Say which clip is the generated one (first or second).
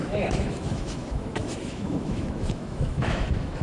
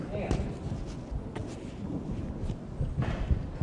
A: first